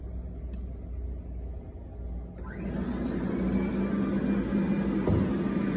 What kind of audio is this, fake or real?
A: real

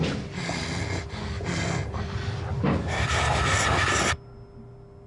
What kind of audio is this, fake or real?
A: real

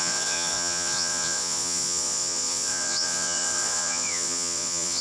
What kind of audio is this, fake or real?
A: fake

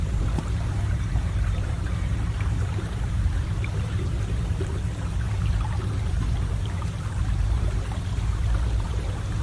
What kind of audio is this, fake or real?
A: fake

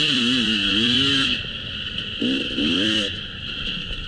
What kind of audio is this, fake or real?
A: fake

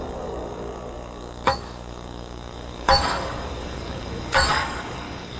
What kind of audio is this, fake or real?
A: fake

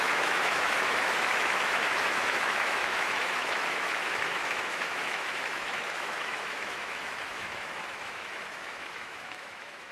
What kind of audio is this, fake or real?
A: fake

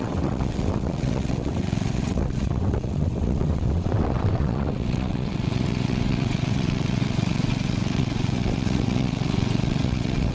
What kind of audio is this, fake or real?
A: fake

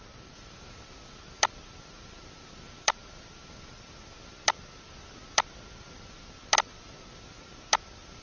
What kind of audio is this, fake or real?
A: real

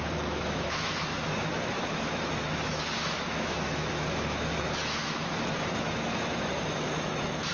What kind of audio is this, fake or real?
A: fake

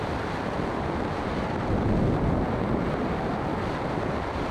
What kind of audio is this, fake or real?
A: real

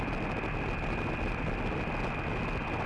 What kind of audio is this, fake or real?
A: real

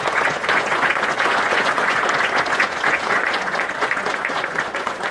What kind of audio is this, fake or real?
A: fake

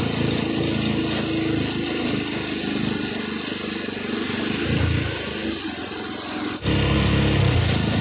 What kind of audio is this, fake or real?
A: real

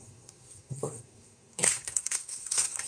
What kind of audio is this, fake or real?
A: fake